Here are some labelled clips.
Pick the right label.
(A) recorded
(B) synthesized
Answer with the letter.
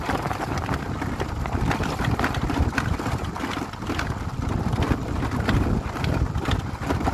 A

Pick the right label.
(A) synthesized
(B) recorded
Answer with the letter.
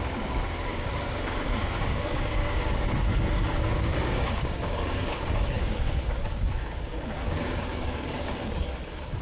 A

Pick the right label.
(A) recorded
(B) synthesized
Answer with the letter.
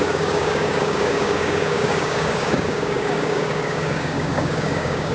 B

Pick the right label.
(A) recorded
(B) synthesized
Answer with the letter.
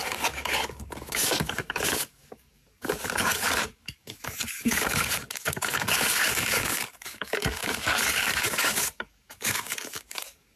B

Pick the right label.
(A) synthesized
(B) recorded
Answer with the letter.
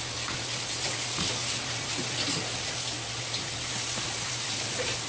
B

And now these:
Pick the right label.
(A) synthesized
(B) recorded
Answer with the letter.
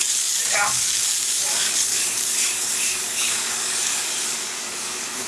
A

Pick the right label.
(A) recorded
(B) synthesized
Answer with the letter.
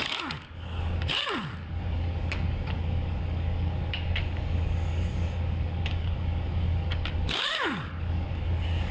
B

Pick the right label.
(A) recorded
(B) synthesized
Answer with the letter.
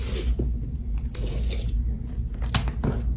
A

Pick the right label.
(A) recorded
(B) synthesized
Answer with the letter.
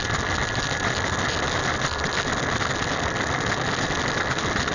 A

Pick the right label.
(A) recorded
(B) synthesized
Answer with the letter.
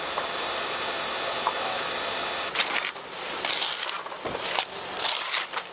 A